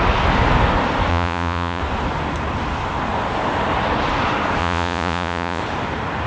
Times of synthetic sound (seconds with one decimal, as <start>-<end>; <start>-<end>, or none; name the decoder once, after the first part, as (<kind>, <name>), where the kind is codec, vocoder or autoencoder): 1.1-1.8 (vocoder, Vocos); 4.6-5.6